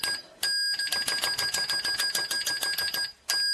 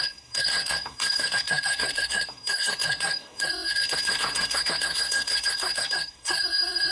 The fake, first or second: second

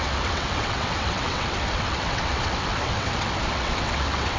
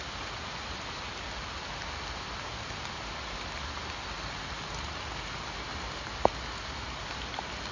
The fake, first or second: first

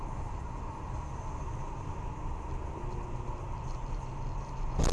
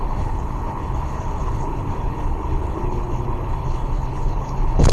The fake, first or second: second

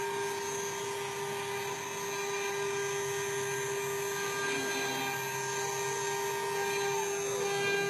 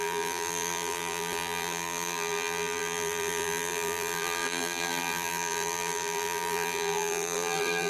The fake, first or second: second